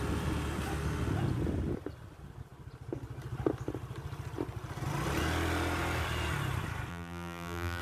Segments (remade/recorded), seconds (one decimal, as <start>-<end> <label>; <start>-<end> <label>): 0.0-6.9 recorded; 6.9-7.8 remade